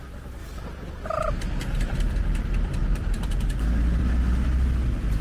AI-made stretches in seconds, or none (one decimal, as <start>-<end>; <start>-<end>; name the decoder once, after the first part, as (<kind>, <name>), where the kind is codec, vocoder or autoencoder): 2.8-3.3 (vocoder, BigVGAN v2)